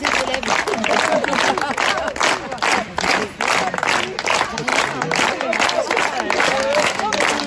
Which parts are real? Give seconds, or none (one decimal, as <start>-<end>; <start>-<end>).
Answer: 0.0-6.5; 7.1-7.5